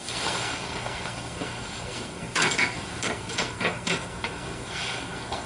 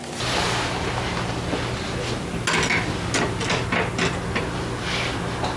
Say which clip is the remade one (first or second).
first